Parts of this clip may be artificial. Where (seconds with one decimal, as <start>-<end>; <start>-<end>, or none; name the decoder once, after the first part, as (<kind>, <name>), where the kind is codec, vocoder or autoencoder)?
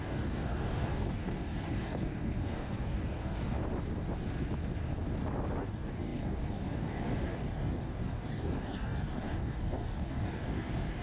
0.0-3.6 (codec, DAC); 5.6-11.0